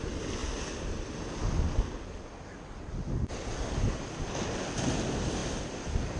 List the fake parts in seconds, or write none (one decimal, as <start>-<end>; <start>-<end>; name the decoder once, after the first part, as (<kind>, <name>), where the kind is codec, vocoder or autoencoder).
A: none